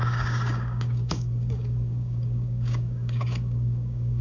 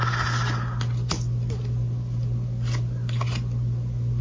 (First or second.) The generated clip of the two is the first